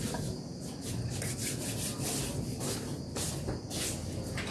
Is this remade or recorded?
recorded